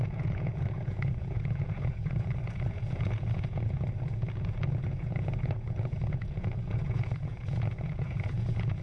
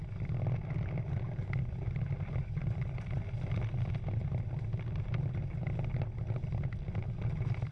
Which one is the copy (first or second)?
first